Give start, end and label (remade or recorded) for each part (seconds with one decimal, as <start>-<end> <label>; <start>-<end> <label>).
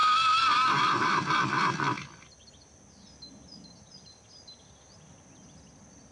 0.0-6.1 recorded